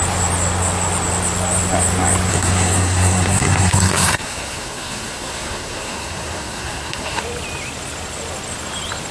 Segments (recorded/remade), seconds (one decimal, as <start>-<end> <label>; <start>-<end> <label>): 0.0-2.3 recorded; 2.3-7.2 remade; 7.2-9.1 recorded